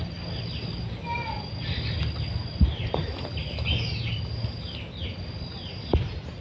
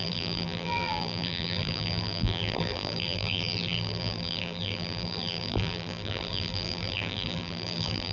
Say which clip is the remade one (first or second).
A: second